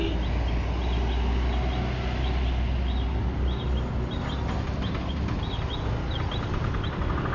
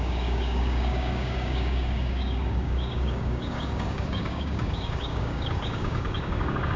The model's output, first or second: second